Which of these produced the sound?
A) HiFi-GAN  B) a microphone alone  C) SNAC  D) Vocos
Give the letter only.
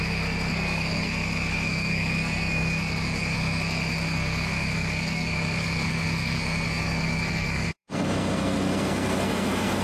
C